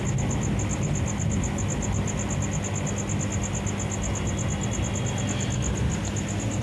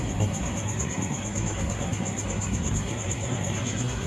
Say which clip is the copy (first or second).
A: second